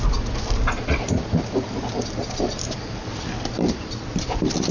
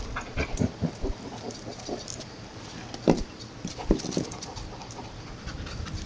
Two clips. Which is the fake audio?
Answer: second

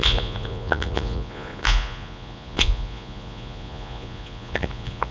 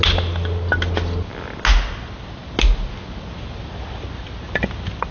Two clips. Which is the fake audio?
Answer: first